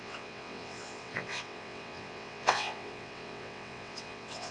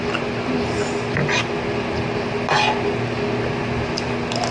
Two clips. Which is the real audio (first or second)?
second